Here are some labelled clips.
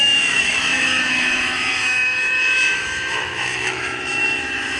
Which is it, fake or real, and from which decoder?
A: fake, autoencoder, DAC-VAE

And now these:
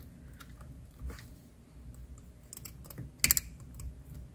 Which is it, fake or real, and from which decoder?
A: real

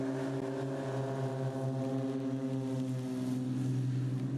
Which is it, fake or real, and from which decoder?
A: real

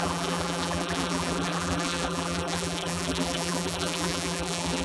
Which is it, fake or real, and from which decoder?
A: fake, vocoder, BigVGAN v2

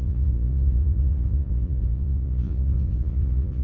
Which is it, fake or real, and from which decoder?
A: fake, vocoder, Vocos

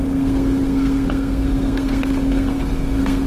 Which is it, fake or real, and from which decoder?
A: fake, codec, SNAC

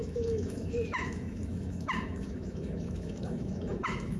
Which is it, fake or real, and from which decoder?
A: fake, autoencoder, DAC-VAE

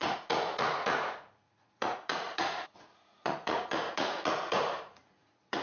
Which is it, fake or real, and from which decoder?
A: fake, vocoder, Vocos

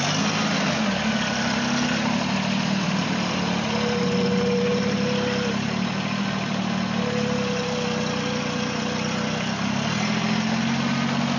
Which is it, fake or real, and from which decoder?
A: real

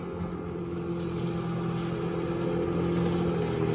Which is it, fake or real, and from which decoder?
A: real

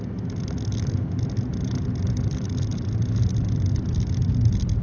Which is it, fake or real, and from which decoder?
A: real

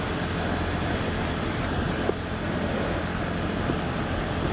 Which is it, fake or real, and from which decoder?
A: real